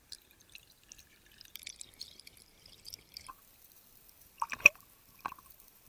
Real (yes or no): no